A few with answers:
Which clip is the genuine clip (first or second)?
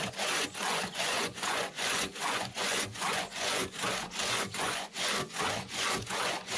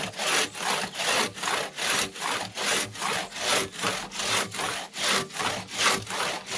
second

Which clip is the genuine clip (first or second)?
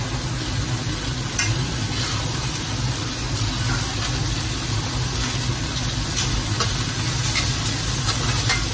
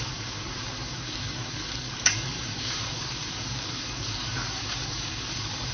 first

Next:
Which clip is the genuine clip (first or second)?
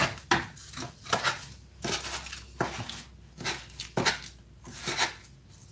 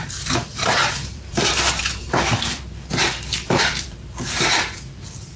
first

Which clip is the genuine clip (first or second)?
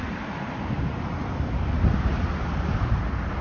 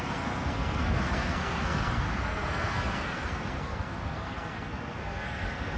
first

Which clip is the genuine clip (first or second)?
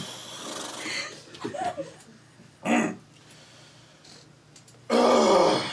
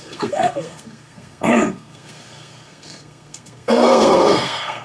first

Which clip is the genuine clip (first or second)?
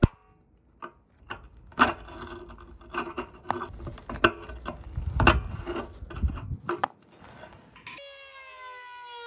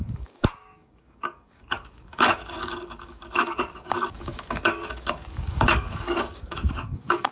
first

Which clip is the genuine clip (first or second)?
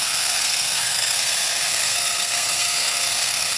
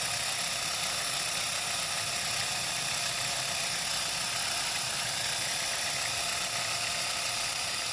second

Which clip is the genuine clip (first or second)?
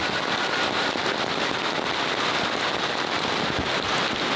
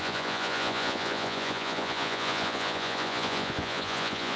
first